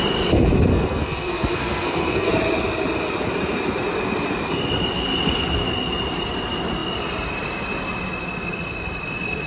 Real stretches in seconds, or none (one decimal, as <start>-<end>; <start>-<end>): 0.0-0.7; 2.3-9.5